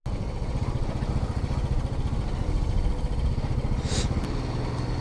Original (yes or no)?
yes